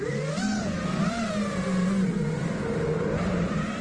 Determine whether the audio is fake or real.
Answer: fake